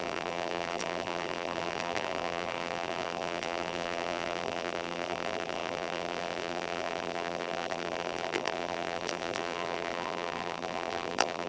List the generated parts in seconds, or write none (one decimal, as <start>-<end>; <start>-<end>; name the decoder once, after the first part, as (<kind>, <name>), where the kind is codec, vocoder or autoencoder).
0.0-11.5 (vocoder, BigVGAN v2)